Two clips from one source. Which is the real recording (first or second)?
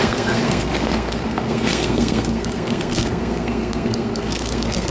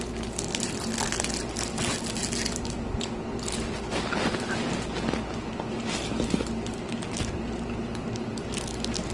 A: second